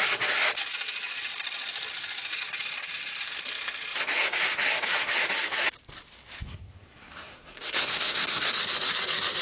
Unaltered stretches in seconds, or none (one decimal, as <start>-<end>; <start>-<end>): 0.0-6.4; 8.5-9.4

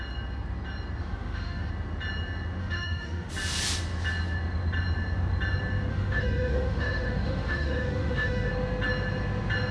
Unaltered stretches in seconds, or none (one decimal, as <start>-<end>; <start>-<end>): 0.0-1.0; 1.7-2.6; 3.3-5.9; 8.5-9.7

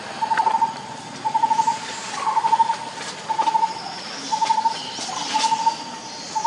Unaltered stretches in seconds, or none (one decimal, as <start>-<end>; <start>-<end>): none

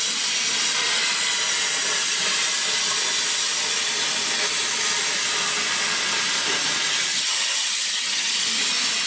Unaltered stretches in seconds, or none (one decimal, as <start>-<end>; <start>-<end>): 0.0-7.1; 8.4-9.1